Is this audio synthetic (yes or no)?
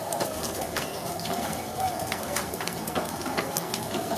yes